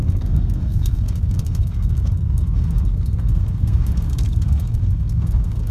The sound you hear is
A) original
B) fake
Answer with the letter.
B